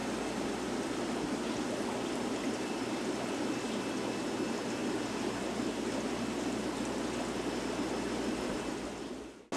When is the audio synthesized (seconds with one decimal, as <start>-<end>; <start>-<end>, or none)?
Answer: 0.0-3.8